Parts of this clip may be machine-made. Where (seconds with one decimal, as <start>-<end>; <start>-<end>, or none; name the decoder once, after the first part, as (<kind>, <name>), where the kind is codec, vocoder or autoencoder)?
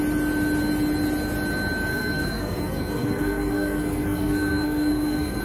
1.9-5.4 (codec, SNAC)